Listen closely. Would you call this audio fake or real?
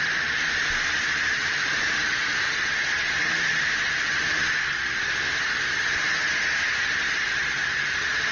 fake